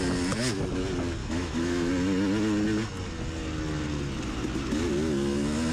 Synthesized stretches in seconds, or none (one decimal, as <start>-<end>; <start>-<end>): 1.2-1.9